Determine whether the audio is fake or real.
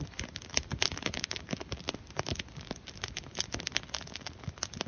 real